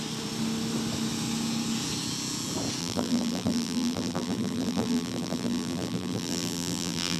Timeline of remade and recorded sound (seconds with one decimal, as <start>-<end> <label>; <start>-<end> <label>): 0.0-2.8 recorded; 2.8-7.2 remade